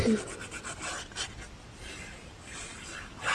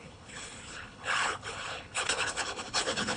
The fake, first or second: second